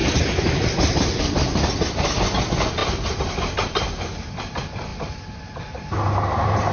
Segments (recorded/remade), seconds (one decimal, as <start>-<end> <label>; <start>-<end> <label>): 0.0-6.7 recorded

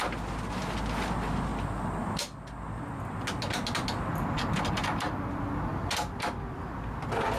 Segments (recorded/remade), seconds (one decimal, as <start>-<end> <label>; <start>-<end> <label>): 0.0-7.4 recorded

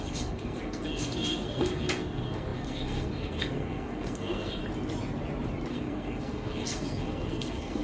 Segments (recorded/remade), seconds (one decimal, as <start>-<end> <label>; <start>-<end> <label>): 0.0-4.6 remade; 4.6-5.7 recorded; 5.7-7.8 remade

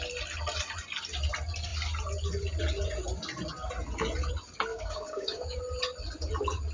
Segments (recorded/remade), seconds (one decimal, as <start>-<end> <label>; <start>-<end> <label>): 0.0-4.7 recorded; 4.7-5.6 remade; 5.6-6.7 recorded

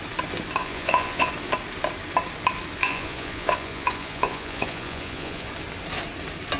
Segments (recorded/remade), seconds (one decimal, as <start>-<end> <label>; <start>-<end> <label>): 0.0-0.6 recorded; 0.6-1.3 remade; 1.3-2.8 recorded; 2.8-5.5 remade; 5.5-6.6 recorded

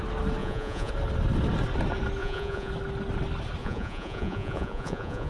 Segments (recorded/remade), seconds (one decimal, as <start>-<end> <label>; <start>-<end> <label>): 0.0-0.4 recorded; 0.4-0.9 remade; 0.9-2.2 recorded; 2.2-2.7 remade; 2.7-3.6 recorded; 3.6-5.3 remade